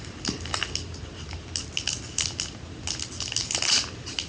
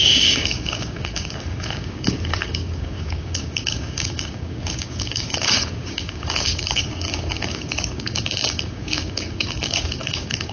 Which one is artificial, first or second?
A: second